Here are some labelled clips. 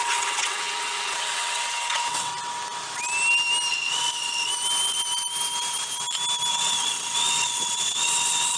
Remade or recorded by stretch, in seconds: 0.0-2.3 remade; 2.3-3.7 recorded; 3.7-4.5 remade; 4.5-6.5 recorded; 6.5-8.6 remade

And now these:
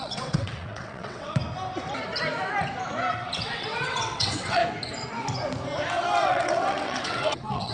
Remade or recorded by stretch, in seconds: 0.0-1.4 remade; 1.4-3.2 recorded; 3.2-4.6 remade; 4.6-6.2 recorded; 6.2-7.7 remade

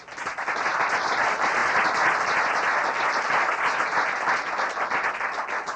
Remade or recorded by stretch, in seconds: 0.0-5.8 recorded

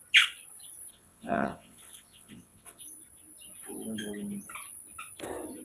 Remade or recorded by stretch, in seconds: 0.0-0.9 recorded; 0.9-2.8 remade; 2.8-5.6 recorded